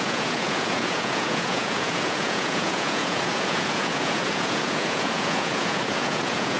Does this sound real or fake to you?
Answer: fake